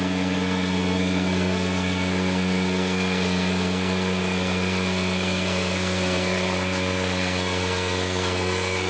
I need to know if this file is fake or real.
fake